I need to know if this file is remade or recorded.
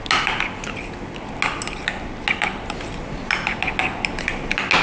recorded